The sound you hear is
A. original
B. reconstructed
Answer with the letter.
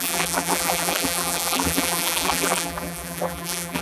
B